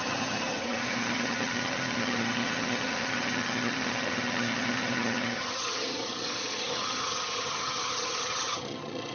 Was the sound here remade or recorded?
remade